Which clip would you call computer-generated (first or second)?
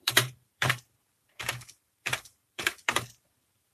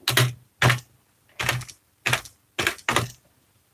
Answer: first